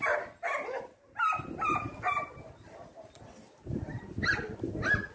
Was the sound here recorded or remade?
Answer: recorded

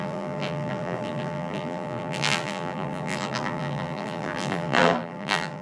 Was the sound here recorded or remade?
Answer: remade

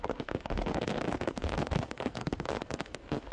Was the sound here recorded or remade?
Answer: remade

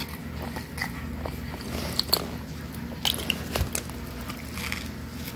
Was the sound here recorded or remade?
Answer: recorded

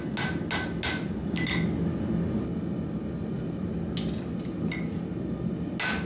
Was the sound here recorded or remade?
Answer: recorded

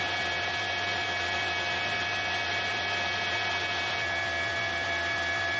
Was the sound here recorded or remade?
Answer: recorded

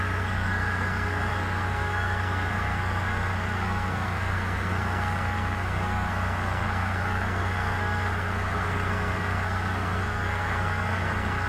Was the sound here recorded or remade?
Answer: remade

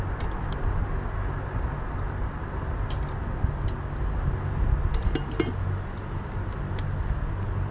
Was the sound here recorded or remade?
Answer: recorded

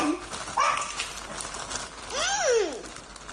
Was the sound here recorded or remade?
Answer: recorded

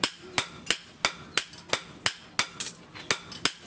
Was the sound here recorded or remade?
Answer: recorded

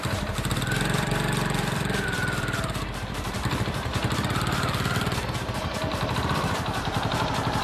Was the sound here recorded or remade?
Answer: remade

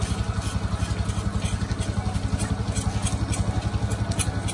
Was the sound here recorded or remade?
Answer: recorded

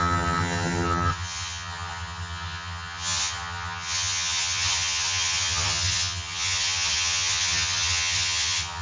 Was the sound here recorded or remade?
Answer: remade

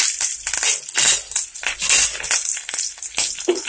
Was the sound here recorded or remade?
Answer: recorded